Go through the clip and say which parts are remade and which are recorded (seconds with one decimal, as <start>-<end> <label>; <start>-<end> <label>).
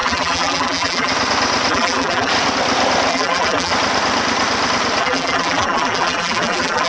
0.0-1.1 remade; 1.1-1.7 recorded; 1.7-2.3 remade; 2.3-3.1 recorded; 3.1-3.7 remade; 3.7-5.0 recorded; 5.0-6.9 remade